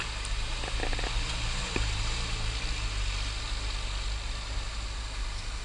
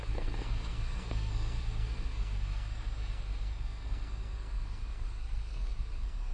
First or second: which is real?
first